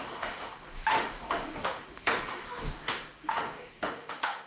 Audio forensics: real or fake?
fake